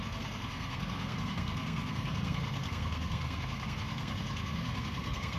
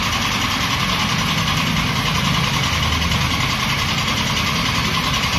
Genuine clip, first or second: second